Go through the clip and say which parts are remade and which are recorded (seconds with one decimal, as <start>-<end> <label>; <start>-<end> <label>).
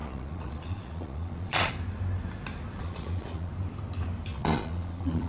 0.0-1.7 remade; 1.7-2.8 recorded; 2.8-3.5 remade; 3.5-4.3 recorded; 4.3-5.3 remade